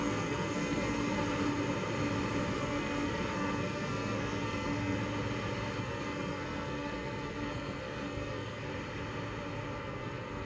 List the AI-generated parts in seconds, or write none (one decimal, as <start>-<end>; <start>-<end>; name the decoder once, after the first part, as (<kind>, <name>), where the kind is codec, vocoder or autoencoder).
0.0-1.2 (codec, SNAC); 2.5-5.0; 5.8-8.7; 9.8-10.5